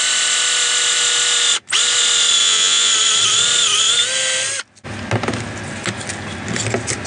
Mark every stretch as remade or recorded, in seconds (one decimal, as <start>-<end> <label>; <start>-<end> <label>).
0.0-2.4 recorded; 2.4-2.9 remade; 2.9-7.1 recorded